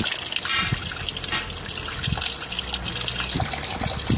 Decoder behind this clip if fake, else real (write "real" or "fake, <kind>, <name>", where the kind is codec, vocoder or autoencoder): real